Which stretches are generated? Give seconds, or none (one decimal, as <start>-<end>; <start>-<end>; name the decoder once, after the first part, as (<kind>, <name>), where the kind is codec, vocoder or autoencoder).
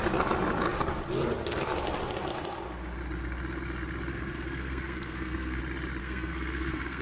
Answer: 4.1-5.6 (codec, SNAC); 6.0-7.0